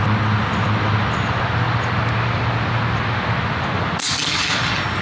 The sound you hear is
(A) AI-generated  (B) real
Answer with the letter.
B